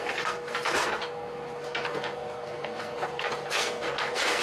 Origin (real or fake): fake